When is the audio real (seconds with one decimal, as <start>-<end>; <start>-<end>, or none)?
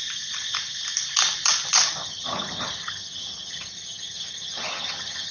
0.0-2.0